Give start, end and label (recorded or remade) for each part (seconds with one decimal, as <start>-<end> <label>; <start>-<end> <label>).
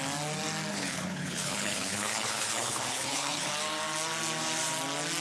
0.0-0.7 recorded; 0.7-3.5 remade; 3.5-5.2 recorded